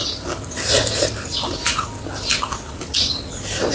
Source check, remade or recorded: recorded